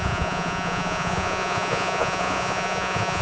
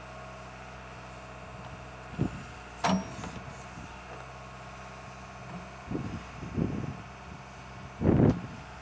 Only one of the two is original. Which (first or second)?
second